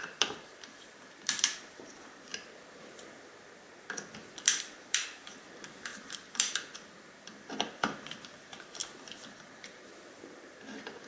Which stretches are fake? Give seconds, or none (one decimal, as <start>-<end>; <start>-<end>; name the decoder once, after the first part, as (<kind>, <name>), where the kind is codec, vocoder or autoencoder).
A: 0.0-2.3 (vocoder, BigVGAN v2); 3.8-11.1